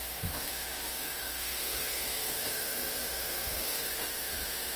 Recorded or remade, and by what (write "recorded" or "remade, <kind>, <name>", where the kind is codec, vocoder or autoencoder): remade, autoencoder, DAC-VAE